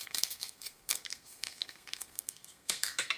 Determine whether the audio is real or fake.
fake